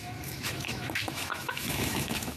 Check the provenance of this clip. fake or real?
fake